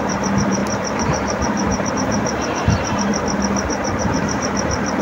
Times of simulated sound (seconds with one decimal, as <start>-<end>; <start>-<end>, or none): 0.0-3.1; 3.7-5.0